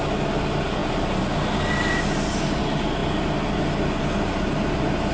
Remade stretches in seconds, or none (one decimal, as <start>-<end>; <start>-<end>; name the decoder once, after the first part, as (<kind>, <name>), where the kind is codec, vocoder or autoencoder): none